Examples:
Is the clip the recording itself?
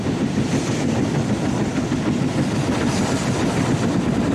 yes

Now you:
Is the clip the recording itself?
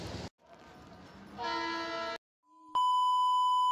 yes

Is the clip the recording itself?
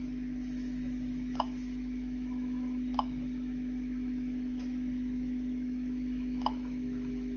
no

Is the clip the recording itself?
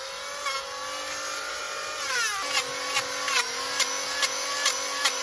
yes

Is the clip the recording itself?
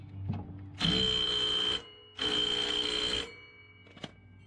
yes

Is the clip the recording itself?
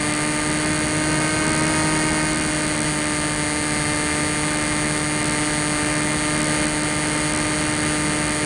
yes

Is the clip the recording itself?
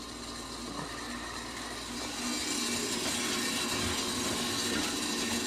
yes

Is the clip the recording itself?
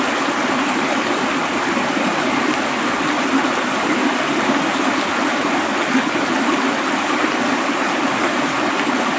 yes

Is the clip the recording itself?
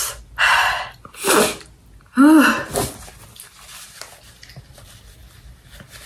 yes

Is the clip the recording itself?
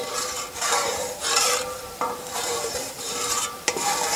no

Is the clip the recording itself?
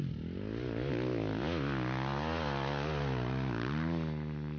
yes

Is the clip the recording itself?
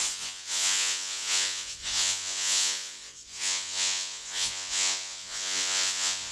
no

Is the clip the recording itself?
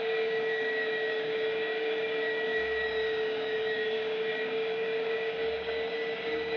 no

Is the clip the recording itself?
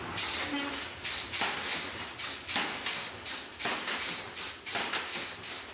yes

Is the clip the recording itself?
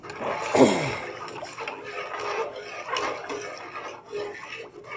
yes